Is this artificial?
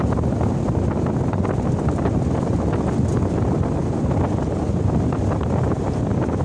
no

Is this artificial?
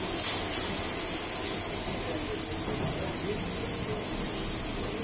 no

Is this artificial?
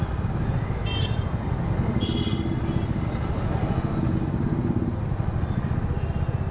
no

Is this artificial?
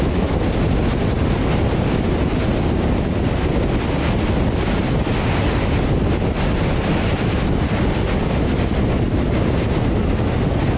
no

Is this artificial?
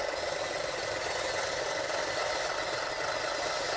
no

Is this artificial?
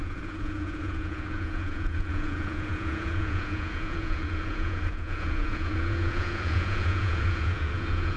yes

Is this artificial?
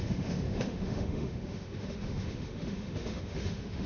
yes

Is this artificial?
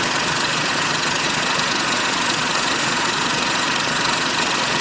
yes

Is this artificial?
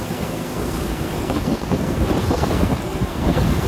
yes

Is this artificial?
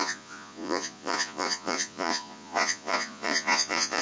yes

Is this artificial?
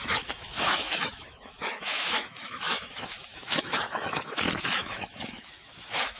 yes